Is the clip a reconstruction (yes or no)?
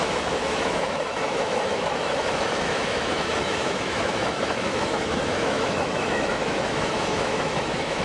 yes